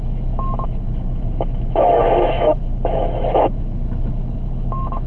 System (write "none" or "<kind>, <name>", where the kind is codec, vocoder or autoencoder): autoencoder, DAC-VAE